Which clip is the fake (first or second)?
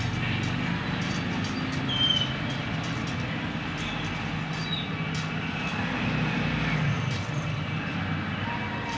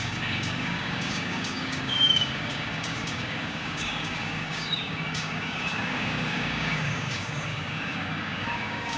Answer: second